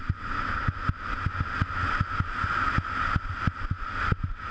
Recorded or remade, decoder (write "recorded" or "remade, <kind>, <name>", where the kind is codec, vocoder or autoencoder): recorded